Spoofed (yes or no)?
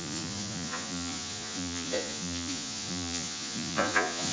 yes